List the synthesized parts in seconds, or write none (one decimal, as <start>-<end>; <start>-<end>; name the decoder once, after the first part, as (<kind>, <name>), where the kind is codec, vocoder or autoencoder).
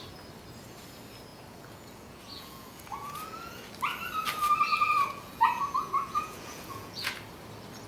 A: 1.3-3.7 (vocoder, Vocos); 4.7-7.1